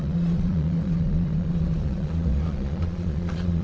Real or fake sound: fake